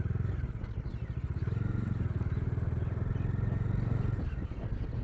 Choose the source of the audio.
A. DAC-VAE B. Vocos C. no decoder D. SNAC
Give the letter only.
C